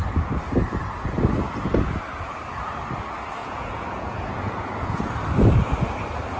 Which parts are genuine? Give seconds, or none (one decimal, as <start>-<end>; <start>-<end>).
0.0-3.4; 5.1-6.4